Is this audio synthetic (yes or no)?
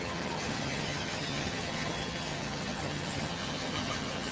yes